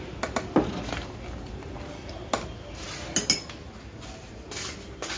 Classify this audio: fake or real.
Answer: real